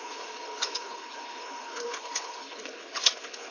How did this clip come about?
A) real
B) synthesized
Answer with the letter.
B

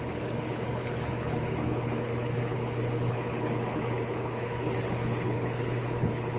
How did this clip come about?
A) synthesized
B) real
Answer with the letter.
A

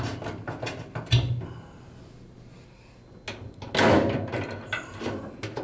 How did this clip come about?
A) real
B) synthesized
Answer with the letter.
A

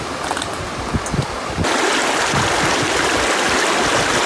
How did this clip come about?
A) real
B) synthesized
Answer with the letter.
A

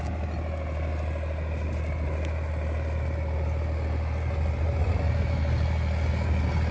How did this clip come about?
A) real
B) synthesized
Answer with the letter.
A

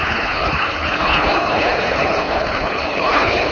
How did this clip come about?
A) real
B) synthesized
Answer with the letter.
B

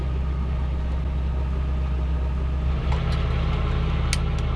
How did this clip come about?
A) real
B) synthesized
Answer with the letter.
A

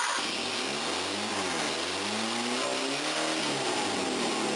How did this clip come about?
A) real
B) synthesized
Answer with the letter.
A